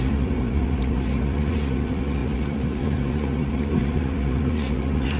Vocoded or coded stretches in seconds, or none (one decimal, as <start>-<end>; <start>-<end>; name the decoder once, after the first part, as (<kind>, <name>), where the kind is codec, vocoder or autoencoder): 0.0-5.2 (vocoder, Vocos)